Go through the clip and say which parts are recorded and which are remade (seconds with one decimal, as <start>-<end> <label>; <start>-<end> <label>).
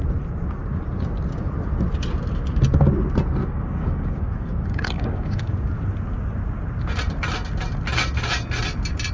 0.0-3.4 recorded; 3.4-5.7 remade; 5.7-9.1 recorded